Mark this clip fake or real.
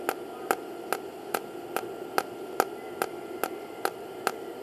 real